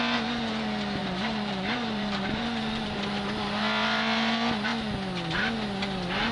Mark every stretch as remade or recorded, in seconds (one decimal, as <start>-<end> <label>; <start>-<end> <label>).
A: 0.0-1.0 recorded; 1.0-3.1 remade; 3.1-6.3 recorded